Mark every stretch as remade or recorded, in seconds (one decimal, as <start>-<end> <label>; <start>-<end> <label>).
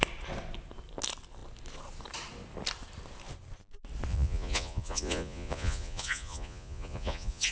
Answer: 0.0-4.1 recorded; 4.1-7.5 remade